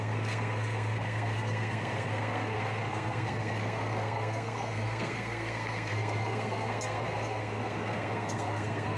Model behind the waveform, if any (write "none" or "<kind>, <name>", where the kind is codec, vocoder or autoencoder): codec, SNAC